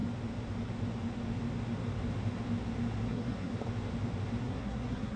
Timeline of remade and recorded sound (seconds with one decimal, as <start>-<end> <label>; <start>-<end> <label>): 0.0-3.1 recorded; 3.1-3.5 remade; 3.5-4.4 recorded; 4.4-5.2 remade